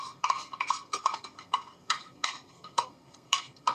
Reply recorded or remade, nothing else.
remade